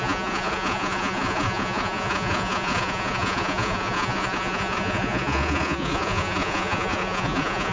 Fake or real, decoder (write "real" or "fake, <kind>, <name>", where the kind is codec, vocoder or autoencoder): fake, vocoder, Vocos